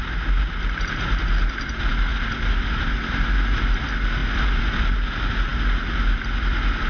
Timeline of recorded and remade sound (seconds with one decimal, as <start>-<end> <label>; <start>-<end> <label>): 0.0-6.9 recorded